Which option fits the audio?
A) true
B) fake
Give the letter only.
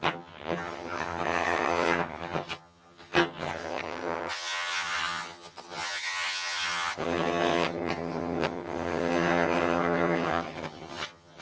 B